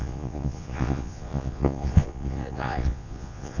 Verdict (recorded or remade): remade